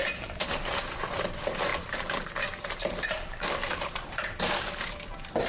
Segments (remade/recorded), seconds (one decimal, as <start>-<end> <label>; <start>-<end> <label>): 0.0-5.5 remade